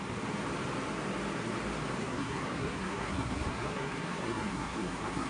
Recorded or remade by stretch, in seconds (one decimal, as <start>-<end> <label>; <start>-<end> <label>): 0.0-2.0 recorded; 2.0-5.3 remade